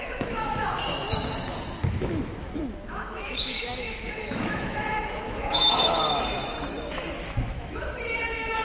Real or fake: fake